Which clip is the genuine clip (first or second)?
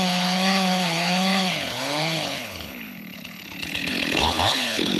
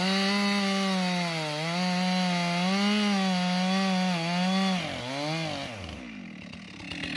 second